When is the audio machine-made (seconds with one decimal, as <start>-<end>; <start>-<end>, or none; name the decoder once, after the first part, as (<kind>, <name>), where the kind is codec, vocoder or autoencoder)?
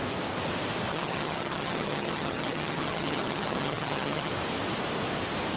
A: 0.9-4.3 (vocoder, HiFi-GAN)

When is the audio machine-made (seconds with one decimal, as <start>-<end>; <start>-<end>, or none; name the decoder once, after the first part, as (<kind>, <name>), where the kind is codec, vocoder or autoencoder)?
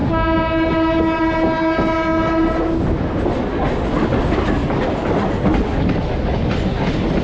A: none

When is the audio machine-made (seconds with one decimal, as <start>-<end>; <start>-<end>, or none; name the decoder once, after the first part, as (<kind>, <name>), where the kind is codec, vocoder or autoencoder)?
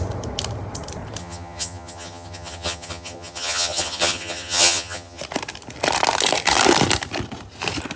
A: 1.2-5.2 (vocoder, HiFi-GAN)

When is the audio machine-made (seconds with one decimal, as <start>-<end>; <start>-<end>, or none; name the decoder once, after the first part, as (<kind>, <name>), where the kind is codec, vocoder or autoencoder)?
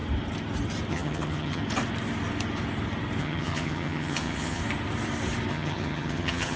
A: 0.9-1.6 (vocoder, HiFi-GAN); 3.2-4.6; 5.5-6.6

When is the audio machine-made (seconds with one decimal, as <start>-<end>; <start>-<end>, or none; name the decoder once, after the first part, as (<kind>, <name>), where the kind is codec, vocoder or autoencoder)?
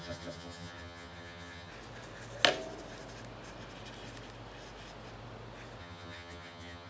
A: 0.0-1.7 (vocoder, HiFi-GAN); 5.8-6.9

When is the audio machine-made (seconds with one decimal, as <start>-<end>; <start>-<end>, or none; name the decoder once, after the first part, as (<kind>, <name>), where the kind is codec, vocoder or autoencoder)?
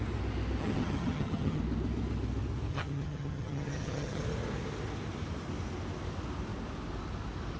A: 0.6-1.6 (vocoder, HiFi-GAN); 2.7-4.2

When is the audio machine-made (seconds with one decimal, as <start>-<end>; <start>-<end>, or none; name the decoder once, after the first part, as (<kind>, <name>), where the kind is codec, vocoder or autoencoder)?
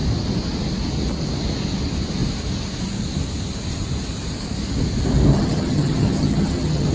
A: 5.3-6.9 (vocoder, HiFi-GAN)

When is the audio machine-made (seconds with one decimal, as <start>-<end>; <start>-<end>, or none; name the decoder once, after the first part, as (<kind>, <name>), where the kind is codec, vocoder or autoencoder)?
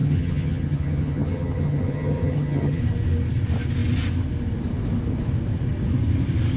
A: 0.0-2.8 (vocoder, HiFi-GAN)